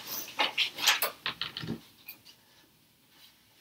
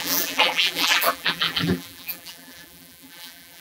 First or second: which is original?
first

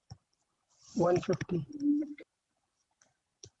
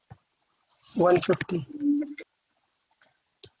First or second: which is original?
second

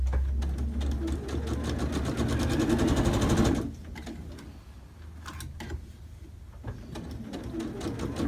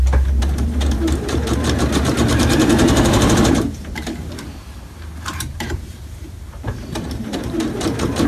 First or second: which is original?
first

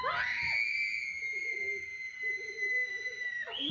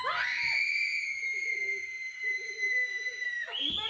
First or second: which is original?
first